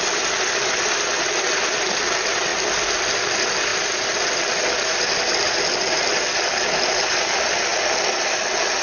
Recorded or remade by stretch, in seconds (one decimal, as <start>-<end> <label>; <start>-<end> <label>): 0.0-8.8 recorded